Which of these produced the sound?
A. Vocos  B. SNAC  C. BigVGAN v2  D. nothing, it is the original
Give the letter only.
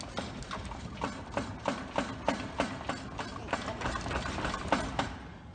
D